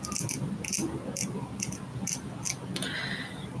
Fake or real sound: real